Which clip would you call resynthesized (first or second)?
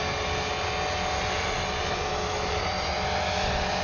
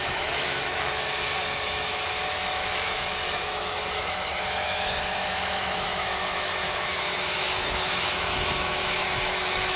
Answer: second